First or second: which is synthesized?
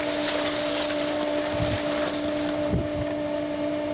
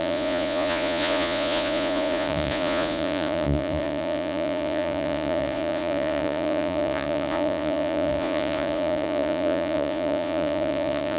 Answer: second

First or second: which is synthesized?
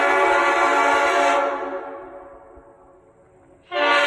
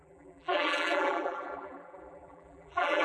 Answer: second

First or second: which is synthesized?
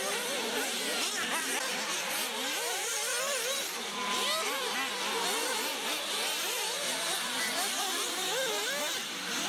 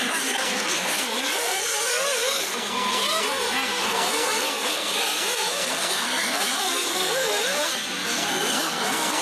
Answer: second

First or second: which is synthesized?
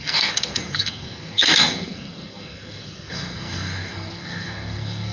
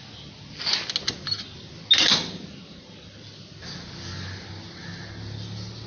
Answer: first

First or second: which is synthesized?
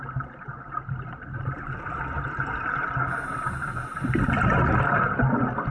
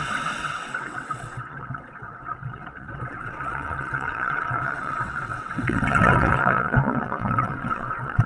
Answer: second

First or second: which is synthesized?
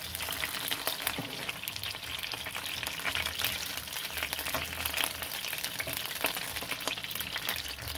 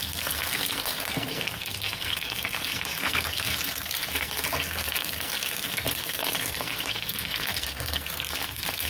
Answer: second